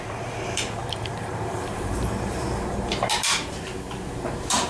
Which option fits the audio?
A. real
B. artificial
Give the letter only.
B